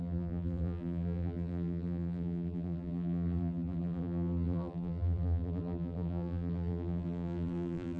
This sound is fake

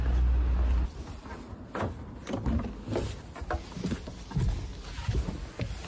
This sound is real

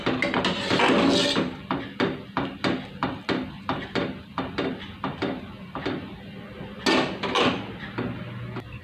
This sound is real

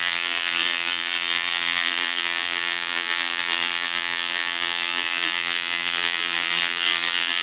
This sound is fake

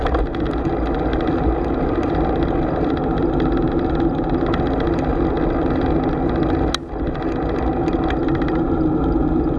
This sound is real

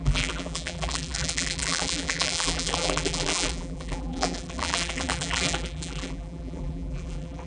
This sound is fake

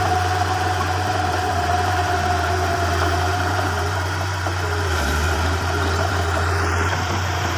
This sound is fake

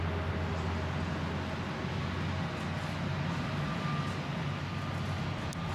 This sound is real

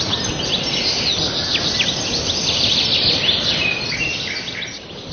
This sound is real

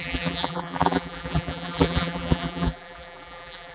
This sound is fake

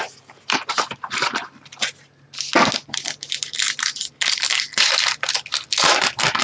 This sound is real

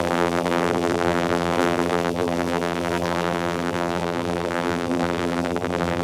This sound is fake